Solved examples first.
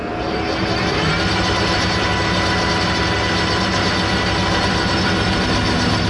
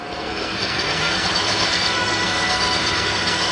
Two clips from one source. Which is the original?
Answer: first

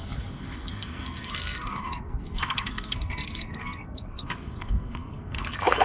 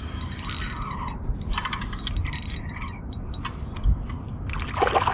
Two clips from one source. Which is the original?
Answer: second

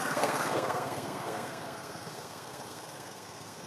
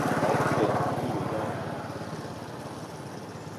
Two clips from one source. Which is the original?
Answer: second